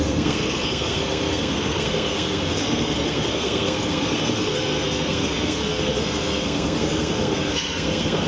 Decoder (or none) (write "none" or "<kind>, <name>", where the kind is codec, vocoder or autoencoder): codec, SNAC